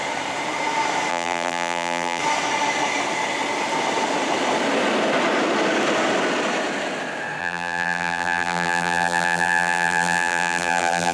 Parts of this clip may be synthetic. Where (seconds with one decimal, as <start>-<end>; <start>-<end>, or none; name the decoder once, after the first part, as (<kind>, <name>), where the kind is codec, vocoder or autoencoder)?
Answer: 1.1-2.2 (vocoder, BigVGAN v2); 7.4-11.1